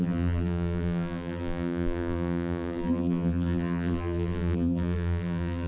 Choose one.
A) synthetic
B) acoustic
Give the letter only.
A